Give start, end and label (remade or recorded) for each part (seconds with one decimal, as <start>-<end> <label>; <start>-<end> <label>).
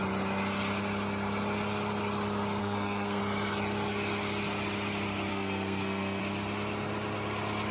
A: 0.0-2.6 recorded; 2.6-3.2 remade; 3.2-5.3 recorded; 5.3-6.2 remade; 6.2-7.7 recorded